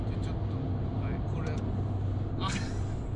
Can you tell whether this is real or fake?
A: real